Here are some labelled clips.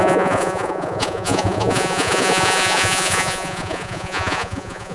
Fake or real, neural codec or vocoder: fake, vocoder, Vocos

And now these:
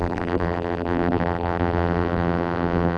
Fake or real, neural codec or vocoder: fake, vocoder, BigVGAN v2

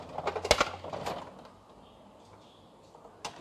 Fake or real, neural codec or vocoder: real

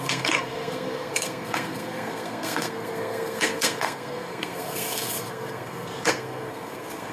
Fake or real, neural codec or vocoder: fake, codec, SNAC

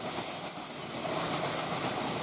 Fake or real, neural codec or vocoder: real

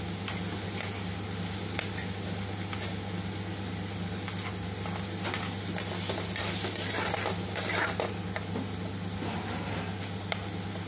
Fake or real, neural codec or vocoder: real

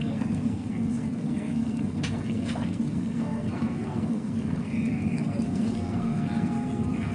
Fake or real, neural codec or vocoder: fake, codec, SNAC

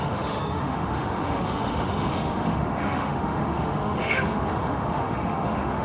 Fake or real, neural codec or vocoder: fake, autoencoder, DAC-VAE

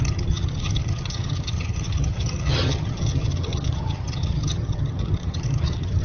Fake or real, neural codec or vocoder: fake, vocoder, HiFi-GAN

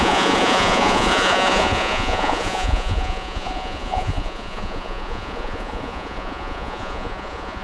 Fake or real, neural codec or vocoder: fake, vocoder, Vocos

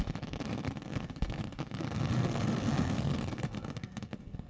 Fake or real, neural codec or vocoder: fake, codec, SNAC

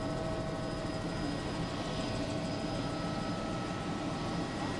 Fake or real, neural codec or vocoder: real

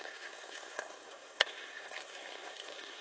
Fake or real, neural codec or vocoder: fake, codec, SNAC